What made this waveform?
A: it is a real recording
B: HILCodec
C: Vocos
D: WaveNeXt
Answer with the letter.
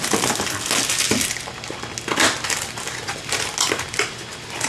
A